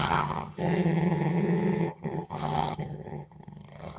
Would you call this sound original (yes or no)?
no